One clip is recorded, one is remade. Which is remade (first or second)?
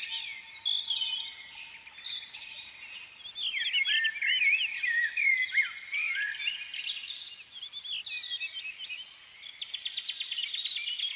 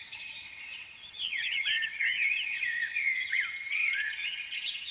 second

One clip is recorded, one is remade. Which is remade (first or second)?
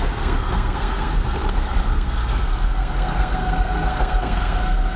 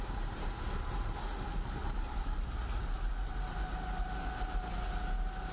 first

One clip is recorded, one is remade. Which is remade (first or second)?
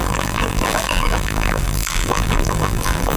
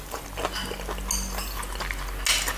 first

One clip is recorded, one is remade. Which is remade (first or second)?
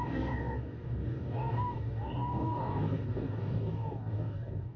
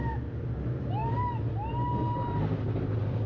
first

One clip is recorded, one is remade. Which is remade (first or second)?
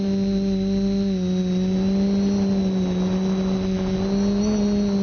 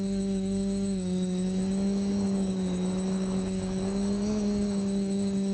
second